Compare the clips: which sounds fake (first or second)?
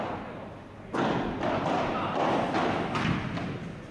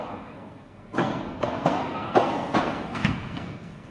second